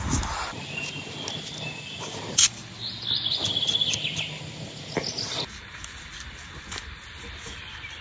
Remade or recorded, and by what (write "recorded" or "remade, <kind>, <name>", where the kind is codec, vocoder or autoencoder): recorded